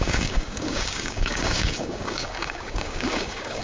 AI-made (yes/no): yes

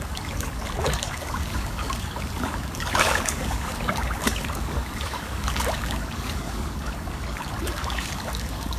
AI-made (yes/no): yes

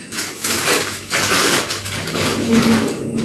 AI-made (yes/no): yes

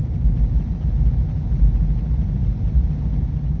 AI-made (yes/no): no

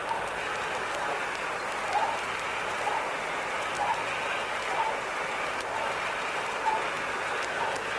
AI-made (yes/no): no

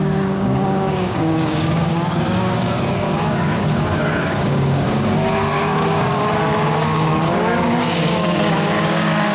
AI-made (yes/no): yes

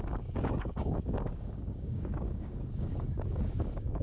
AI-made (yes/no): yes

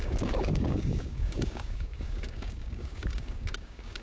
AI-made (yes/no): yes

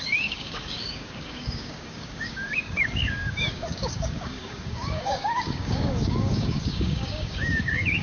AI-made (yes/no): yes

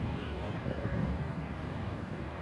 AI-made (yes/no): yes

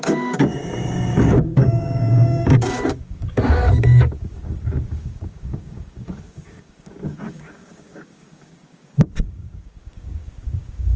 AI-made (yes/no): yes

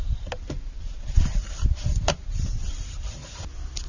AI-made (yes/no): no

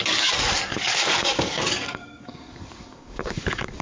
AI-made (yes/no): yes